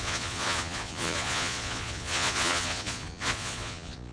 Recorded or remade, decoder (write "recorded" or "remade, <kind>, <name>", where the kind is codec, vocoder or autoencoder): remade, vocoder, Vocos